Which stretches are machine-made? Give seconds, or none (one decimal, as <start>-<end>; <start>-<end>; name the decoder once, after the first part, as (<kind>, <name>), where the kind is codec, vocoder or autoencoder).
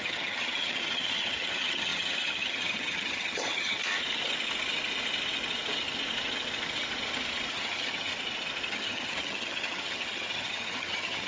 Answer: 0.0-3.8 (vocoder, HiFi-GAN); 7.5-8.1; 8.7-11.3